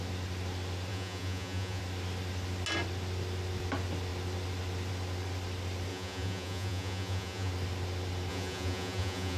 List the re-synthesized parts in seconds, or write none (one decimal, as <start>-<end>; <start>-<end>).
0.9-1.8; 5.9-7.5; 8.3-9.4